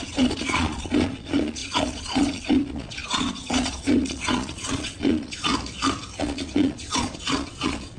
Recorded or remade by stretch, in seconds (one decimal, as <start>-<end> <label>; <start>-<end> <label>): 0.0-5.5 remade; 5.5-6.2 recorded; 6.2-8.0 remade